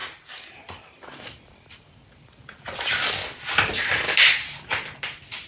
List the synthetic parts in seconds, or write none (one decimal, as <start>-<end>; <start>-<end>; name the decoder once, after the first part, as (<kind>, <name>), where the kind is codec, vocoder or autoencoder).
0.0-3.1 (vocoder, BigVGAN v2)